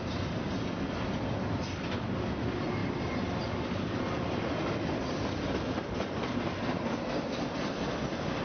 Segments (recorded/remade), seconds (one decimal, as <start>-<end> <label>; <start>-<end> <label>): 0.0-2.8 recorded; 2.8-4.9 remade; 4.9-8.4 recorded